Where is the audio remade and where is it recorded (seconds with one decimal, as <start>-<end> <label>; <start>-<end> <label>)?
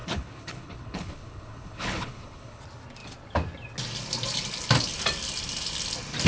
0.0-2.6 remade; 2.6-6.3 recorded